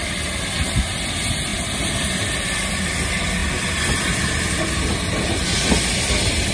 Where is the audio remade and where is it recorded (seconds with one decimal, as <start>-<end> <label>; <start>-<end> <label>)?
0.0-6.5 recorded